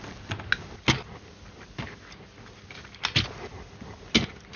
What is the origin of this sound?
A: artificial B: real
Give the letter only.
B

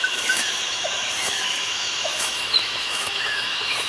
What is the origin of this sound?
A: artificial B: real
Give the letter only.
A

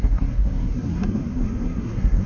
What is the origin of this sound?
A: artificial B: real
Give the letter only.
A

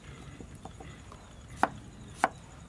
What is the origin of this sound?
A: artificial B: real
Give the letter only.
B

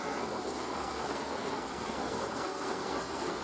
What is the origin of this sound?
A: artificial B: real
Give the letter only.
A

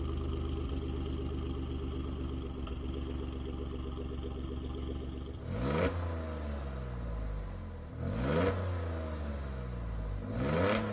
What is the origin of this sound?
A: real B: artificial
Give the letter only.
A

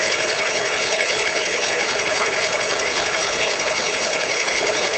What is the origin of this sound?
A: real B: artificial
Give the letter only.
B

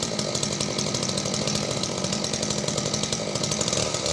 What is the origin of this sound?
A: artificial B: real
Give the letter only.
B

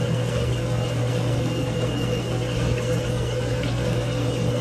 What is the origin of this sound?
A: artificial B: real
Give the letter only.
A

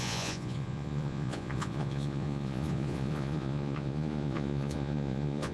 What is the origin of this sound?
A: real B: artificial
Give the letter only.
B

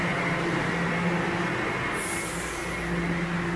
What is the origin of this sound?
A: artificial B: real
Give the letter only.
B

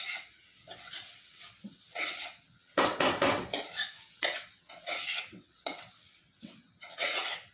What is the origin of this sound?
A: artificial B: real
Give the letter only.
A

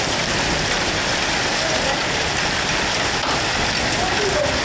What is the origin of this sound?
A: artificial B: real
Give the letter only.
B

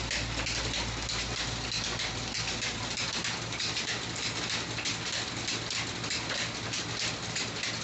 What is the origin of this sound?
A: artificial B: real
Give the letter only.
B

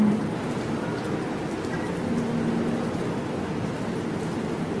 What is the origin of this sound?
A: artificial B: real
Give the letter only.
B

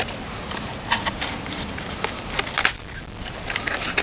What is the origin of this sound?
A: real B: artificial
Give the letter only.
A